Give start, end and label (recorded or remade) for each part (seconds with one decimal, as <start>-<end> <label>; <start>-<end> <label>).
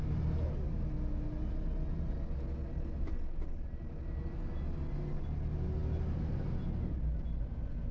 0.0-7.9 recorded